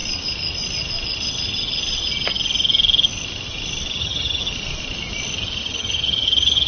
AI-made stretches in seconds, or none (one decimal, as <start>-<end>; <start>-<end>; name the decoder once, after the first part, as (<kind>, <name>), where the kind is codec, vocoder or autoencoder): 4.0-4.4 (vocoder, HiFi-GAN); 5.6-6.7